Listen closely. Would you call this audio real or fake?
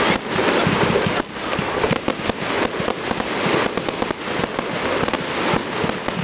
real